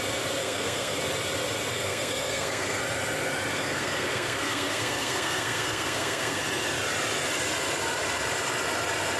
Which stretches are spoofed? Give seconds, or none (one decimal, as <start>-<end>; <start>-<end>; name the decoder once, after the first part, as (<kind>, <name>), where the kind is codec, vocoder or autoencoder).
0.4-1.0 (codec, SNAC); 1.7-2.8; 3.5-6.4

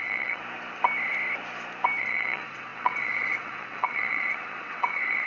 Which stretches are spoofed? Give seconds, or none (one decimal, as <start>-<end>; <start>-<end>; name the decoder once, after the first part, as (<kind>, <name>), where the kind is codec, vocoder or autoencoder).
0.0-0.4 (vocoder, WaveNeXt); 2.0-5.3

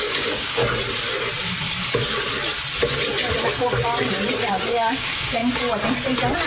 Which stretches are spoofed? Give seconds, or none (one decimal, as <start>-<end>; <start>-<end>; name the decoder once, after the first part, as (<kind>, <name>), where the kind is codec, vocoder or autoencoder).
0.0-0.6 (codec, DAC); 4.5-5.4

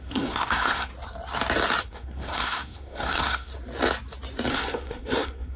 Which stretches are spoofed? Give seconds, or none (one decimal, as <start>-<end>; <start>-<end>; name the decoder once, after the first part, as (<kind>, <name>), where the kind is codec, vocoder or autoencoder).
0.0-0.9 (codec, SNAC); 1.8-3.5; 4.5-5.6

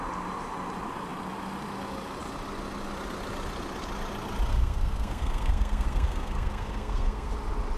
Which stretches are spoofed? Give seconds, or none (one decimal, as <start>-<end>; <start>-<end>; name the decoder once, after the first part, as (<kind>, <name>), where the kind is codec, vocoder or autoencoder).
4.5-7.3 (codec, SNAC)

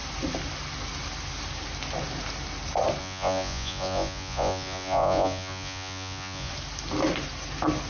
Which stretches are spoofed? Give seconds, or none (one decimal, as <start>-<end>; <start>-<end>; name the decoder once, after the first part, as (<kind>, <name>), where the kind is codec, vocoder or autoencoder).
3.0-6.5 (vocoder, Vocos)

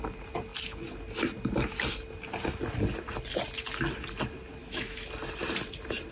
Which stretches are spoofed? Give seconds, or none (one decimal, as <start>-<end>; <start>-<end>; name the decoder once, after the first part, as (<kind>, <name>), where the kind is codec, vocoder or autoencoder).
4.6-5.1 (autoencoder, DAC-VAE)

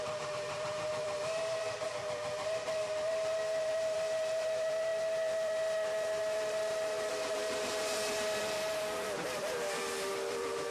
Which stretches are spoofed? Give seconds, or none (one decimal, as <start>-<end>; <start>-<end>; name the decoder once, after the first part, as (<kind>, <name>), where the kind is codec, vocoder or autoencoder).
0.0-10.7 (vocoder, BigVGAN v2)